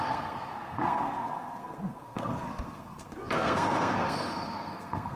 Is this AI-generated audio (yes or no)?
yes